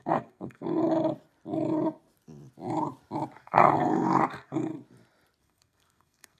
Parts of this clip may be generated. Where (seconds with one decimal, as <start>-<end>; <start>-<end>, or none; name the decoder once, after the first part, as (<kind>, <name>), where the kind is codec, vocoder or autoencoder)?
0.0-0.8 (codec, SNAC); 3.4-4.7; 5.4-6.4